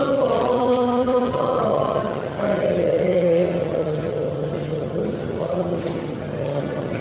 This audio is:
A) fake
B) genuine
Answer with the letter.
A